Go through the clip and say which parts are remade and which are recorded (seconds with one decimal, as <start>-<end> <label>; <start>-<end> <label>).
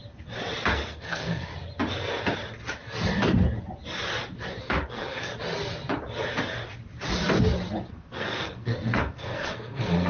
0.0-0.7 recorded; 0.7-1.5 remade; 1.5-4.6 recorded; 4.6-5.3 remade; 5.3-7.9 recorded; 7.9-10.1 remade